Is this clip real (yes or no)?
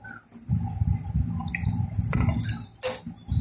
yes